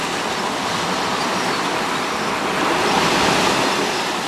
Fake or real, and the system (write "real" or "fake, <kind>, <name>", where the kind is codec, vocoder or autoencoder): real